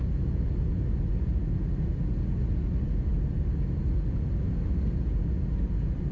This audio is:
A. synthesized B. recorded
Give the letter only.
B